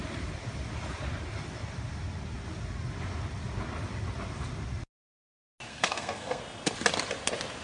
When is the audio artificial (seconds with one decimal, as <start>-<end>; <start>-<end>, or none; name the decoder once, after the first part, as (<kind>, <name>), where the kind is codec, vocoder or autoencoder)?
5.7-6.4 (codec, SNAC)